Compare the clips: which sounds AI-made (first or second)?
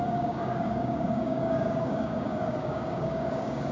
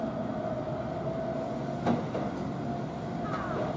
first